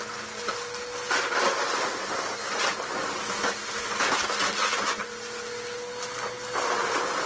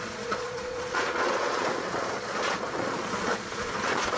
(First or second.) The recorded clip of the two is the first